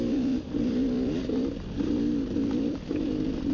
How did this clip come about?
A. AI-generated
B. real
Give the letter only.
A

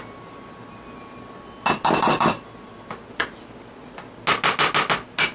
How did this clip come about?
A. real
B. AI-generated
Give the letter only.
A